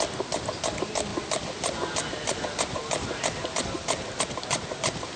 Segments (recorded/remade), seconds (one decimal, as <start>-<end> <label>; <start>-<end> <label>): 0.0-5.2 recorded